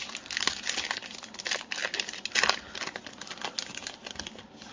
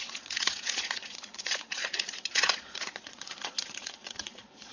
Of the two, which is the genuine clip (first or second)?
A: first